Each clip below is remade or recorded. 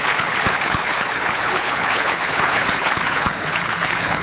remade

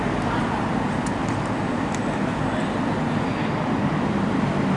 recorded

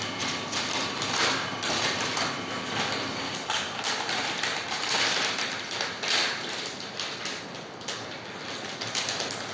recorded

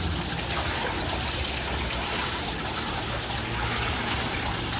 recorded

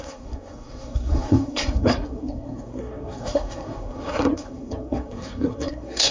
remade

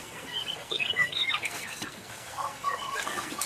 remade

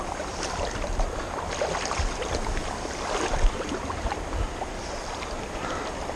remade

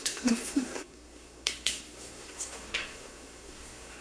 remade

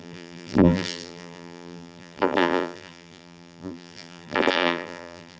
remade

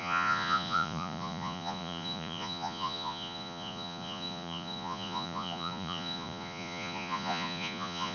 remade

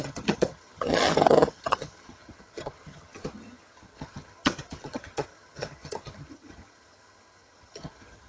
remade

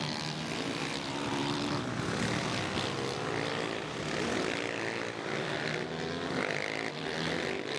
remade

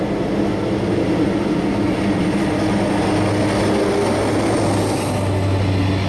recorded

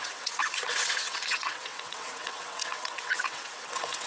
remade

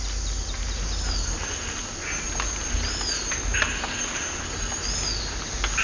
recorded